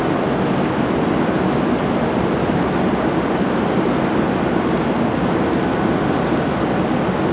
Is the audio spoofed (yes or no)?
no